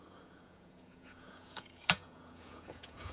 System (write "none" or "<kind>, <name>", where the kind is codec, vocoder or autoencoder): vocoder, Vocos